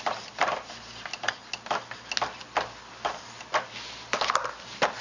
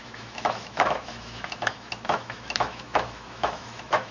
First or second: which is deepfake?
second